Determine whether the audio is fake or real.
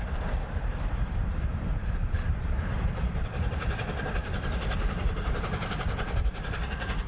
fake